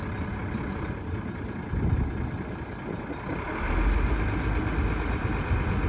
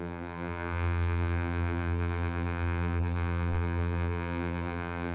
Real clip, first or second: first